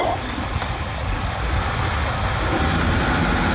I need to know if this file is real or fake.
real